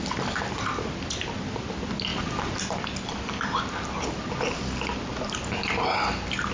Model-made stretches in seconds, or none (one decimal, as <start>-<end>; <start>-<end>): none